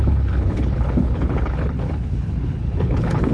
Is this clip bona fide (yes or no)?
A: no